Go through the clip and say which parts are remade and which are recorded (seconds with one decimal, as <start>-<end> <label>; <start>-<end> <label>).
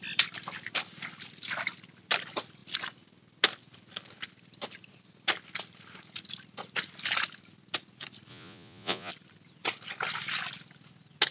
0.0-8.3 recorded; 8.3-9.1 remade; 9.1-11.3 recorded